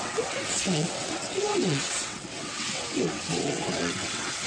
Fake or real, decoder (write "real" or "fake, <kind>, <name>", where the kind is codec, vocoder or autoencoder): fake, vocoder, WaveNeXt